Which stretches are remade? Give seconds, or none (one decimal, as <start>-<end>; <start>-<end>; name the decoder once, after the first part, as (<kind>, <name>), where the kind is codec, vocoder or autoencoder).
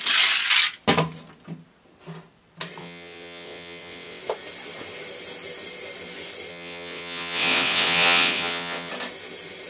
2.8-4.2 (vocoder, WaveNeXt); 6.5-8.9